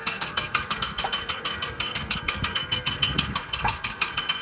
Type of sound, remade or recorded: remade